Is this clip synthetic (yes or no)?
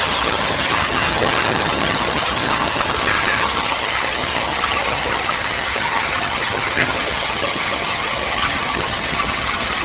yes